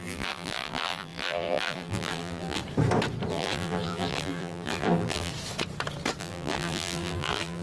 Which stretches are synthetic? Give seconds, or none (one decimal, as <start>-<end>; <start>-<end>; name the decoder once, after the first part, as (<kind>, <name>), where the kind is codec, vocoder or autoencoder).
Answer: 0.0-2.6 (vocoder, BigVGAN v2); 3.3-5.3; 6.2-7.6